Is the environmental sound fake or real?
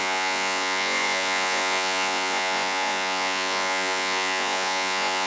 fake